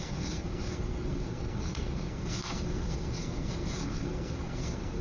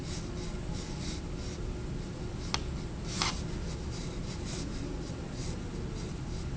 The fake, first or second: first